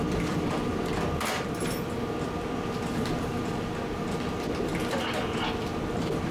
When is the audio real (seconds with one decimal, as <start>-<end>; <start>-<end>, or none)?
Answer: 0.7-3.2